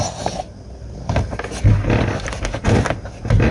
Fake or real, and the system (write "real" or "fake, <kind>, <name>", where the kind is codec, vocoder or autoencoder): real